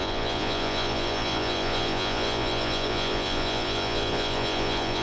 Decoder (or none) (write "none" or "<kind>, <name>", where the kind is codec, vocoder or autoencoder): vocoder, Vocos